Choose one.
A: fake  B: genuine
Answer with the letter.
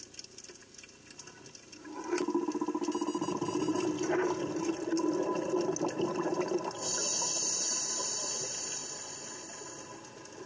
B